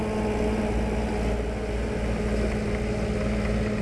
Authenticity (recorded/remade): recorded